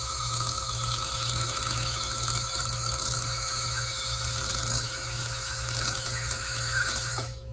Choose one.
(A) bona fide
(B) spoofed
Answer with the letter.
B